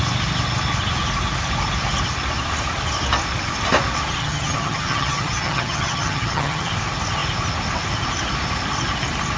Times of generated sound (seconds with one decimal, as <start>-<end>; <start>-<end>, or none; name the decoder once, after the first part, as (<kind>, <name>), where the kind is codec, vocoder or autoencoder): 4.2-6.7 (vocoder, HiFi-GAN)